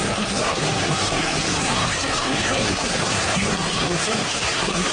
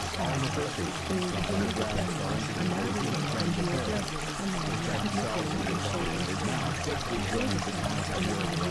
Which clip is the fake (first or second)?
first